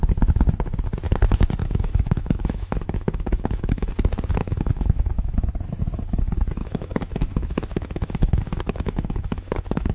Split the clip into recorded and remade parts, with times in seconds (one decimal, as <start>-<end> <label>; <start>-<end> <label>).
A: 0.0-1.6 recorded; 1.6-3.9 remade; 3.9-4.4 recorded; 4.4-5.5 remade; 5.5-6.6 recorded; 6.6-9.9 remade